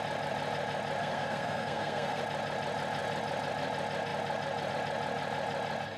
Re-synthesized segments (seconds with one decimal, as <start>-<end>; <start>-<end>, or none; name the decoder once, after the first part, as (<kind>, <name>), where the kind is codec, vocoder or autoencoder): 1.0-2.2 (codec, SNAC)